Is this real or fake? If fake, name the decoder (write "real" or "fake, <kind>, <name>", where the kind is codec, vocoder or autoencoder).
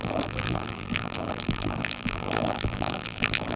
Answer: fake, vocoder, BigVGAN v2